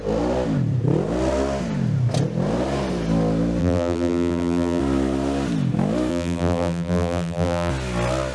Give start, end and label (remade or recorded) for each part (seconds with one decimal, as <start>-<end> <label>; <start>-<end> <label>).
0.0-3.6 recorded; 3.6-4.8 remade; 4.8-6.1 recorded; 6.1-7.7 remade; 7.7-8.3 recorded